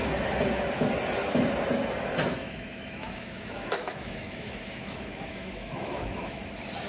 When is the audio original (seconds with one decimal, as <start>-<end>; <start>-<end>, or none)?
0.0-2.4; 6.5-6.9